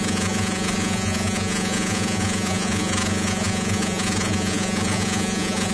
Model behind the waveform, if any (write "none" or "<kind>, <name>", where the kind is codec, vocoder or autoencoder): vocoder, Vocos